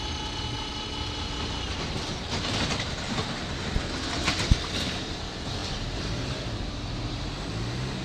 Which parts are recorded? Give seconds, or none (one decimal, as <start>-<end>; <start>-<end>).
0.0-8.0